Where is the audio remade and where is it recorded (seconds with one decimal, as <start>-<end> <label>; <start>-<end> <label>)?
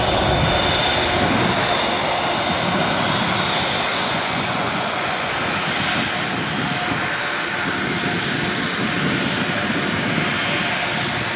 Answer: 0.0-3.9 recorded; 3.9-5.3 remade; 5.3-11.4 recorded